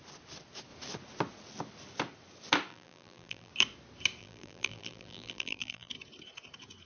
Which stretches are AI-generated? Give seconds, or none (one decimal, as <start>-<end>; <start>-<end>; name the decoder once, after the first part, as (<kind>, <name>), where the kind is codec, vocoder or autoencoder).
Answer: 2.7-3.5 (vocoder, BigVGAN v2); 4.2-5.9